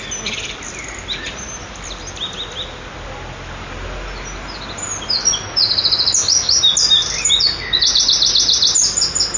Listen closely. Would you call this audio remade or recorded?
recorded